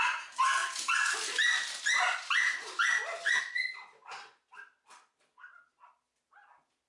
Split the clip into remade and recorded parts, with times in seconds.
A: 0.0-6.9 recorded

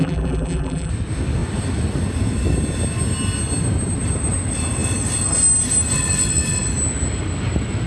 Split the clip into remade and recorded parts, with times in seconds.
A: 0.0-0.9 remade; 0.9-7.9 recorded

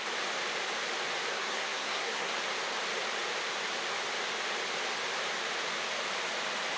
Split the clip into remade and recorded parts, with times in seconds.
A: 0.0-1.3 recorded; 1.3-2.3 remade; 2.3-6.8 recorded

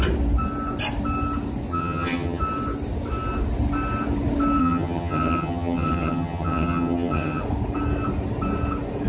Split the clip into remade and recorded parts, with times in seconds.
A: 0.0-1.7 recorded; 1.7-2.4 remade; 2.4-4.6 recorded; 4.6-7.4 remade; 7.4-9.1 recorded

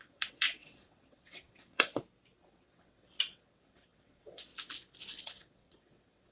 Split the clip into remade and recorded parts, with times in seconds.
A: 0.0-1.9 remade; 1.9-2.4 recorded; 2.4-4.5 remade; 4.5-5.2 recorded; 5.2-6.3 remade

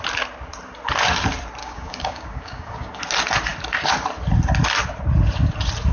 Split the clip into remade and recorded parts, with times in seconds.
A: 0.0-1.6 recorded; 1.6-3.0 remade; 3.0-5.9 recorded